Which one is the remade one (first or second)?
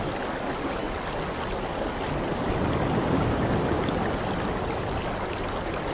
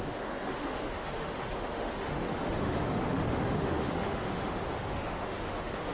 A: second